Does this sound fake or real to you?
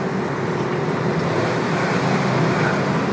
real